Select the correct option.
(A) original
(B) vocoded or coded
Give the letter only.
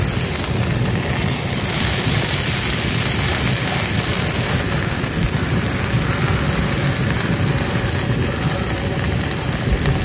A